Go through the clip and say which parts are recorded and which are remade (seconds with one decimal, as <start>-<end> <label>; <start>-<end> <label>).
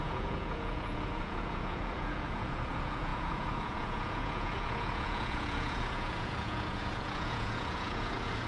0.0-8.5 remade